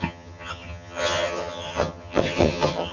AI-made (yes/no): yes